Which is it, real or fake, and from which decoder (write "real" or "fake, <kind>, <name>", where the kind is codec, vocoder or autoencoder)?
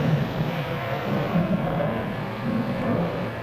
fake, codec, SNAC